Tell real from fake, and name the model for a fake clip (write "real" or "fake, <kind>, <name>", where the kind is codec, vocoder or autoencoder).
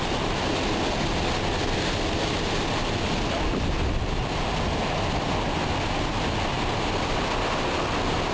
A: real